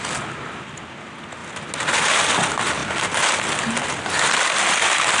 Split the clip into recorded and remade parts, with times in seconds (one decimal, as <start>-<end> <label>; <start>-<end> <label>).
0.0-5.2 recorded